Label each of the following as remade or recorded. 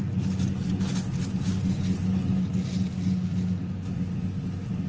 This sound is recorded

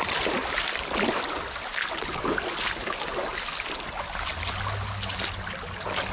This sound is recorded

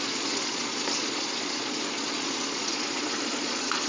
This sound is remade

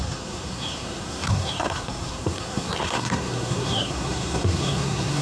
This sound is remade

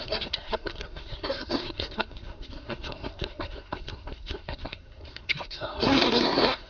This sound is remade